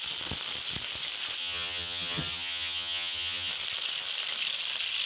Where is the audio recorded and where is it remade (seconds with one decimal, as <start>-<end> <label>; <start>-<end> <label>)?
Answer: 0.0-1.4 recorded; 1.4-3.5 remade; 3.5-5.1 recorded